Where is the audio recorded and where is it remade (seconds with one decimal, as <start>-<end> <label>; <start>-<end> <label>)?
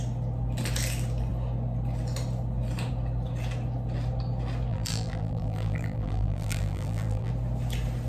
0.0-4.7 recorded; 4.7-7.3 remade; 7.3-8.1 recorded